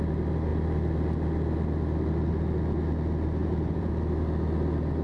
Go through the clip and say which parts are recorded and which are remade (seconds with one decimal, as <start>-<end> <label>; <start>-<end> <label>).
0.0-3.4 recorded; 3.4-3.9 remade; 3.9-5.0 recorded